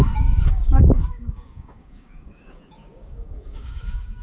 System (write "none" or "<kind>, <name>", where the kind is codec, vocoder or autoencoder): codec, DAC